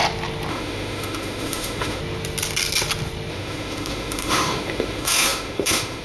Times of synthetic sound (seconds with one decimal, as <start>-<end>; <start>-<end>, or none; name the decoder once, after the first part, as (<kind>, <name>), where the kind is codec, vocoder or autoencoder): 0.5-2.0 (autoencoder, DAC-VAE); 3.3-6.0